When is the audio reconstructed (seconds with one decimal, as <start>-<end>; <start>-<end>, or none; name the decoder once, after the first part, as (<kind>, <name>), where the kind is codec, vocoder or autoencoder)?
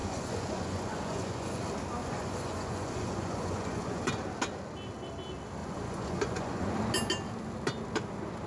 0.0-1.6 (vocoder, Vocos); 2.0-4.1; 5.6-6.7